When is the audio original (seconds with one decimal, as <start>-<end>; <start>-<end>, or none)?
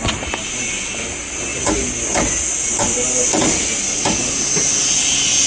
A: 0.0-5.5